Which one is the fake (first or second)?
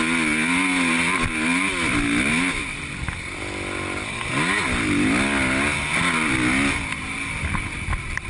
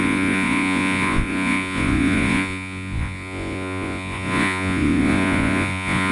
second